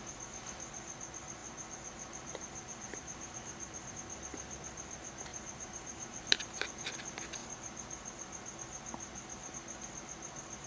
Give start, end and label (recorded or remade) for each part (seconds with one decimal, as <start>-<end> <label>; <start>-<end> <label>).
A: 0.0-1.4 recorded; 1.4-3.9 remade; 3.9-5.3 recorded; 5.3-6.7 remade; 6.7-10.7 recorded

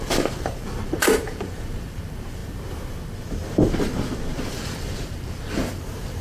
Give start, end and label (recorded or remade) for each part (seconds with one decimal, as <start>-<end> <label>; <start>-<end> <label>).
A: 0.0-2.4 remade; 2.4-4.5 recorded; 4.5-6.2 remade

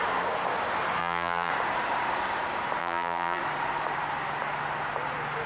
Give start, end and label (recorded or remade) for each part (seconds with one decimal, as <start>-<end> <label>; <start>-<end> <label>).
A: 0.0-1.0 recorded; 1.0-1.5 remade; 1.5-2.8 recorded; 2.8-3.4 remade; 3.4-5.5 recorded

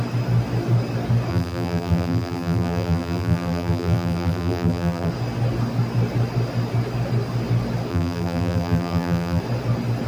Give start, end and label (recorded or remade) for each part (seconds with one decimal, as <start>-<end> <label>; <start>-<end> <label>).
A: 0.0-1.3 recorded; 1.3-5.1 remade; 5.1-7.9 recorded; 7.9-9.4 remade; 9.4-10.1 recorded

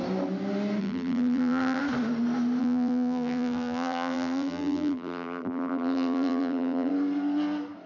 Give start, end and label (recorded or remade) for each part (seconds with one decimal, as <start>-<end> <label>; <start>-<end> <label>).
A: 0.0-0.8 recorded; 0.8-1.8 remade; 1.8-2.6 recorded; 2.6-6.9 remade; 6.9-7.9 recorded